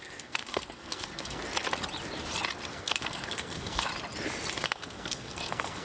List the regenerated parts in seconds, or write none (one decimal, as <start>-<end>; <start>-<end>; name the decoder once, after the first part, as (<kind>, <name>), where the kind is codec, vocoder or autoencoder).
0.0-1.4 (codec, SNAC); 2.7-3.9; 4.6-5.8